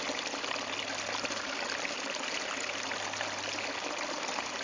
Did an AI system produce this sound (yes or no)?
no